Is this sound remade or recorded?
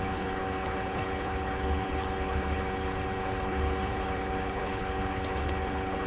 remade